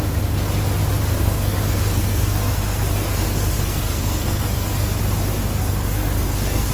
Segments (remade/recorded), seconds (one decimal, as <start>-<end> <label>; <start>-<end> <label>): 0.0-1.1 recorded; 1.1-5.0 remade; 5.0-5.4 recorded; 5.4-6.7 remade